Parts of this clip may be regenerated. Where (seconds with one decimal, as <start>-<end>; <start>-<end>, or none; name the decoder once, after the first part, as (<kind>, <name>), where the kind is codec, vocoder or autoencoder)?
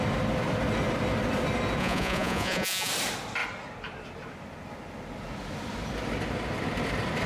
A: 1.8-2.9 (vocoder, Vocos)